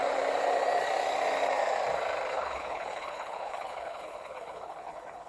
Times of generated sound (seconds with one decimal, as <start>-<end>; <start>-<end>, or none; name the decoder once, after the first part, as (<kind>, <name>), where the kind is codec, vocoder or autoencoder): 2.3-5.3 (codec, HILCodec)